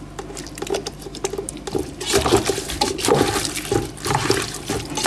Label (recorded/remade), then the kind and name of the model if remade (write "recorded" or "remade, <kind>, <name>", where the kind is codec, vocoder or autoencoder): recorded